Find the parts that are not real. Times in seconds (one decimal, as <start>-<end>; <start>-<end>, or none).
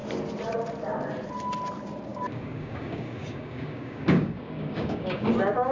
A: 2.1-5.3